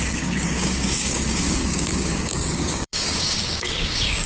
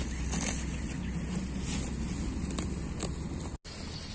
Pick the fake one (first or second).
first